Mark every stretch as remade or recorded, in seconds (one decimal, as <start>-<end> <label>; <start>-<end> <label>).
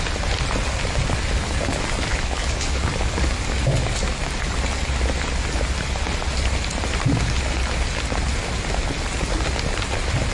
0.0-2.1 recorded; 2.1-3.3 remade; 3.3-10.3 recorded